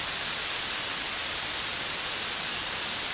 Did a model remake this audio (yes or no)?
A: no